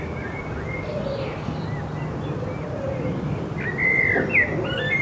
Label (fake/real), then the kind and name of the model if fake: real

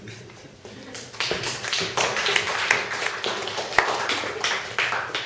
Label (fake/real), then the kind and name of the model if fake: real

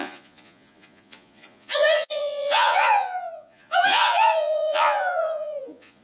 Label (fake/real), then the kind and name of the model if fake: fake, vocoder, Vocos